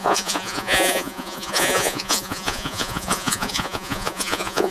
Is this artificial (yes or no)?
yes